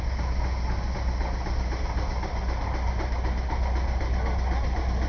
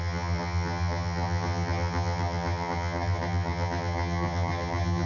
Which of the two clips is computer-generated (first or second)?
second